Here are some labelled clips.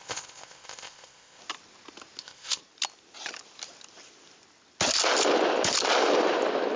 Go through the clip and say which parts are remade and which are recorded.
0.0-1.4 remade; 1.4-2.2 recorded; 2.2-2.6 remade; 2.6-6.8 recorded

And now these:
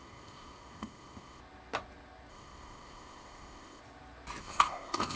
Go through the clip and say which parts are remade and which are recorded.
0.0-1.4 remade; 1.4-2.3 recorded; 2.3-3.8 remade; 3.8-4.4 recorded; 4.4-5.2 remade

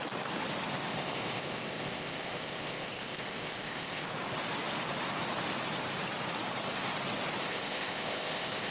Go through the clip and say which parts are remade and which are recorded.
0.0-0.9 recorded; 0.9-4.0 remade; 4.0-7.4 recorded; 7.4-8.7 remade

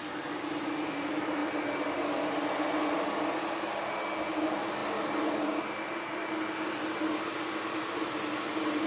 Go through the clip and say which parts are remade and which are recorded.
0.0-8.9 recorded

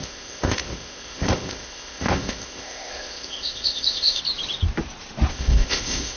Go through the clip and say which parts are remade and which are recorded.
0.0-4.2 remade; 4.2-5.3 recorded; 5.3-6.2 remade